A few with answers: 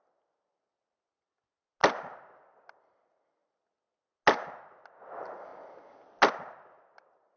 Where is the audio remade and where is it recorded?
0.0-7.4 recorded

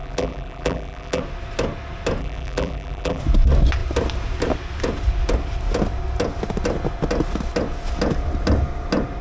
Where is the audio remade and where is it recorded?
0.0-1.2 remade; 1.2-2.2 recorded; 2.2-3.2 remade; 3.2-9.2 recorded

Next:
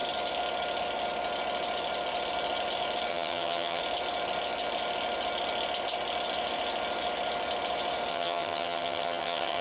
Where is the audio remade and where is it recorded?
0.0-3.1 recorded; 3.1-3.8 remade; 3.8-8.1 recorded; 8.1-9.6 remade

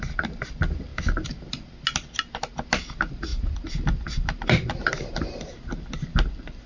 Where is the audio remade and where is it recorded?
0.0-6.7 recorded

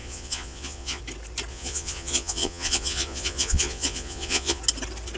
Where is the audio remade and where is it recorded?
0.0-1.0 remade; 1.0-1.5 recorded; 1.5-4.6 remade; 4.6-5.2 recorded